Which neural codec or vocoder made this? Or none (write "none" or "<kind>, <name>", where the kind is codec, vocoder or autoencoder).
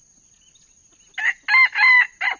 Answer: none